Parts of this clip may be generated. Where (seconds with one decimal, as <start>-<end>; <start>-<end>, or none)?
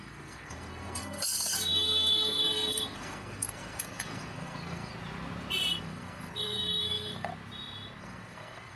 0.0-4.9; 5.8-7.3; 8.0-8.8